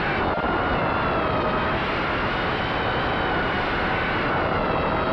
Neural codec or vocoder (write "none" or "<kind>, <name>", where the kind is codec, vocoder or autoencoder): none